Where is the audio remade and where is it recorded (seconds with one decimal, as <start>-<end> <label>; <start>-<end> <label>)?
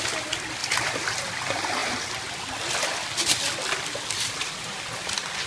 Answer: 0.0-0.6 recorded; 0.6-1.2 remade; 1.2-1.8 recorded; 1.8-5.1 remade; 5.1-5.5 recorded